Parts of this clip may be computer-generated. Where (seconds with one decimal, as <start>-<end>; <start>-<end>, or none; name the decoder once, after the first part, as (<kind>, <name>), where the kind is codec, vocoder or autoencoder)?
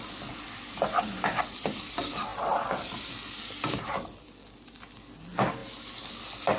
none